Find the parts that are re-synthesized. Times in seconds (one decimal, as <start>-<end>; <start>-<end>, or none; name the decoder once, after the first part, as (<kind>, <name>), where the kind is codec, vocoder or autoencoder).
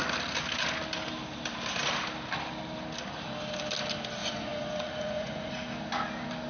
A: 4.2-5.5 (vocoder, Vocos)